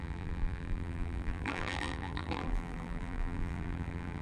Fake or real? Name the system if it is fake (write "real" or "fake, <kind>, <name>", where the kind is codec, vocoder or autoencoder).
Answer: fake, vocoder, BigVGAN v2